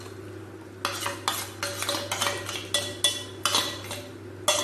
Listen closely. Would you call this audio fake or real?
real